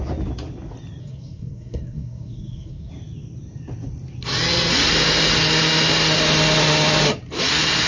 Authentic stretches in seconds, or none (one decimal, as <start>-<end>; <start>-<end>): 0.0-1.0; 2.9-7.9